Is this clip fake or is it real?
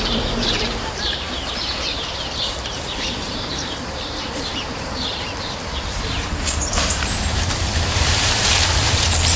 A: fake